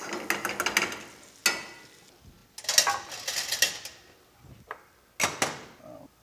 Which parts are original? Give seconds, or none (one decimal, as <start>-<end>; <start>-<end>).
0.0-6.2